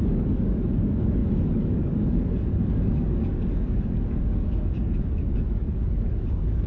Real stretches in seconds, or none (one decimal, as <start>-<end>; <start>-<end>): none